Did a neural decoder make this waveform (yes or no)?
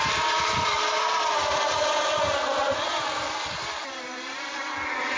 no